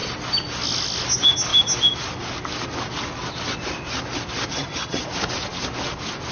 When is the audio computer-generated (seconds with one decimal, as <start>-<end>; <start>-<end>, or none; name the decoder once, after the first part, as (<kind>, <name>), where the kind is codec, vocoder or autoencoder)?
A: 4.5-5.0 (vocoder, HiFi-GAN)